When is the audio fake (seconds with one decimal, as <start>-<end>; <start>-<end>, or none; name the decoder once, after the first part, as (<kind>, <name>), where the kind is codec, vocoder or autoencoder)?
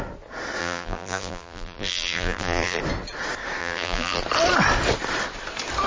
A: 0.6-2.8 (vocoder, BigVGAN v2); 3.6-4.2